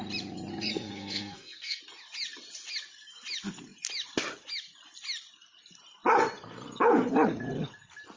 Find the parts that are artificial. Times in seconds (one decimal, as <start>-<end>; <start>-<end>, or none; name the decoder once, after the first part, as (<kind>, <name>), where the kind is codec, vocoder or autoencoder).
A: 0.5-1.8 (codec, SNAC)